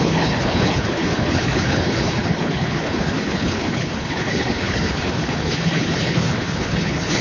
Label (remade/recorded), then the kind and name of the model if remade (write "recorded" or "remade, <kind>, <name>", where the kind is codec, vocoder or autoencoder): remade, codec, HILCodec